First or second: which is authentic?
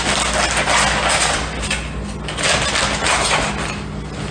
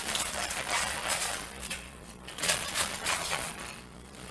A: first